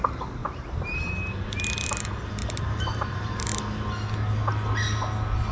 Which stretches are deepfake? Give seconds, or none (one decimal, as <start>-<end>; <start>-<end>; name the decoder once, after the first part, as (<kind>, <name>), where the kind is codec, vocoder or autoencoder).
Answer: 0.4-1.1 (vocoder, BigVGAN v2); 2.4-3.4